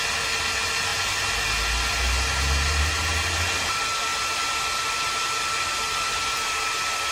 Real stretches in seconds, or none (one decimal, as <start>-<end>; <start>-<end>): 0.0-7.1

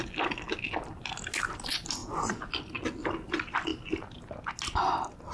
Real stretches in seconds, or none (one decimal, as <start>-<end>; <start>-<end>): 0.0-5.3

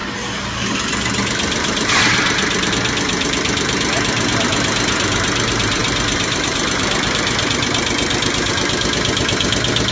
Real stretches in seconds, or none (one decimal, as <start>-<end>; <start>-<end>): 0.0-5.8; 8.5-9.9